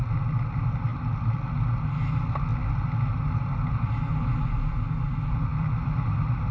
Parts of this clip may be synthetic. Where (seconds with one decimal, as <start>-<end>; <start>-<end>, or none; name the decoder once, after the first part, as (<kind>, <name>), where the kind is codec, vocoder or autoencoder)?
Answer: 0.9-1.5 (vocoder, BigVGAN v2)

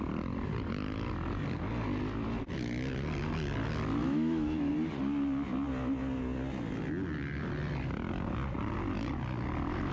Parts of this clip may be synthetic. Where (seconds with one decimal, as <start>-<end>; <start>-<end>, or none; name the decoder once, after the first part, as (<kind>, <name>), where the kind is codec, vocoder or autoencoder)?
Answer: 4.0-4.7 (autoencoder, DAC-VAE)

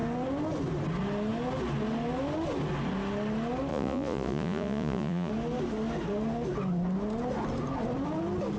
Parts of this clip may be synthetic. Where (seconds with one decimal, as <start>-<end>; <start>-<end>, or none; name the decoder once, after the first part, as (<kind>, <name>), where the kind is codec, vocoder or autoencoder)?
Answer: 3.7-5.3 (vocoder, Vocos)

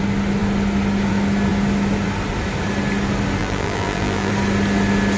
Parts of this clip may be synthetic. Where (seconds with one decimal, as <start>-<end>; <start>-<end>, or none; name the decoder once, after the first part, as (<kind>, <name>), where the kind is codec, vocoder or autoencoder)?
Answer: 3.4-4.3 (vocoder, BigVGAN v2)